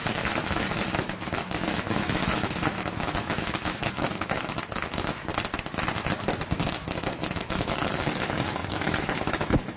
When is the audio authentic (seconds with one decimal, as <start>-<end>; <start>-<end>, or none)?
2.2-2.8; 5.3-6.7